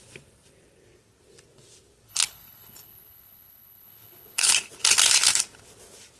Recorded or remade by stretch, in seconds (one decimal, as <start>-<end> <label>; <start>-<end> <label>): 0.0-2.1 recorded; 2.1-4.5 remade; 4.5-6.2 recorded